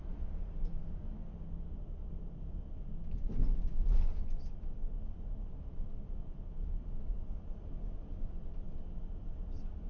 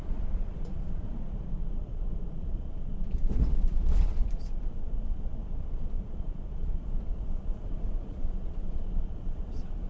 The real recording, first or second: first